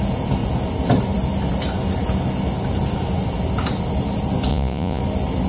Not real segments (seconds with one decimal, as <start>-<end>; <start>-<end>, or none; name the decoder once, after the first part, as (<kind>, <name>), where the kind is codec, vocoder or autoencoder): 4.5-5.0 (vocoder, Vocos)